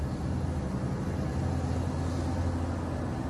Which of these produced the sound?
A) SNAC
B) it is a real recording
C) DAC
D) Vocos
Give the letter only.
B